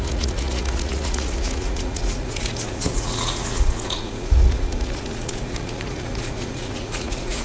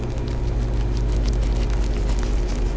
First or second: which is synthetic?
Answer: first